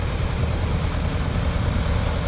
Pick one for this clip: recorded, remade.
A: recorded